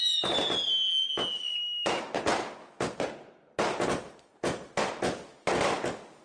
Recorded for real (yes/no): yes